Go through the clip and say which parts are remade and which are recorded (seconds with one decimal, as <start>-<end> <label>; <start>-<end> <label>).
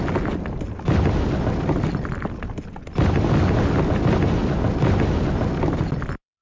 0.0-6.4 recorded